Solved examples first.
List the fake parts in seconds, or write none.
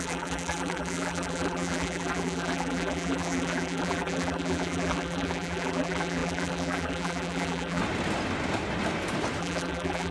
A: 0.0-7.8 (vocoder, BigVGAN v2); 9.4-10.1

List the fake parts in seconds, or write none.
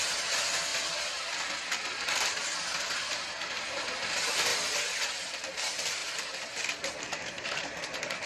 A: 0.0-0.7 (vocoder, BigVGAN v2); 2.0-4.5; 5.3-6.0; 7.0-8.3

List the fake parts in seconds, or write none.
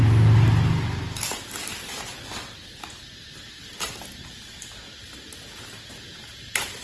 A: none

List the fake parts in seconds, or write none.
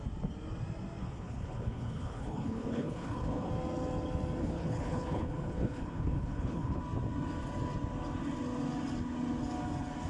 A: 1.0-3.5 (codec, HILCodec); 4.4-6.8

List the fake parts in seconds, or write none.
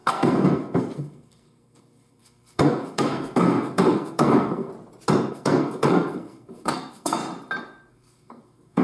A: 0.0-4.7 (codec, SNAC); 5.3-7.2; 7.9-8.8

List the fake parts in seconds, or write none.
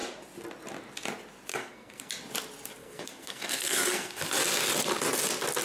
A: 1.5-2.1 (codec, SNAC); 2.8-4.2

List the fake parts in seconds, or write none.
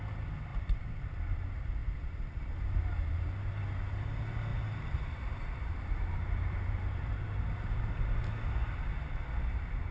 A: 1.8-3.6 (vocoder, BigVGAN v2); 4.5-7.8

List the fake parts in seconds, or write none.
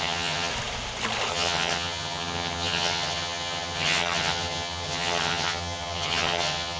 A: 0.0-0.5 (vocoder, HiFi-GAN); 1.3-6.8